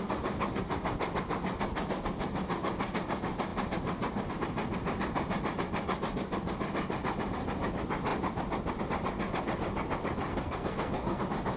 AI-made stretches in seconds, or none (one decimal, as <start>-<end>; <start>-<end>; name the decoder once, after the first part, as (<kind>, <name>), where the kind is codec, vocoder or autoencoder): 10.3-11.2 (codec, SNAC)